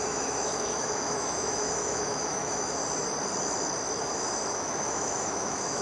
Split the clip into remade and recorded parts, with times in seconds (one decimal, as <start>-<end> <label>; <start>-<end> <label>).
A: 0.0-2.8 remade; 2.8-4.0 recorded; 4.0-5.8 remade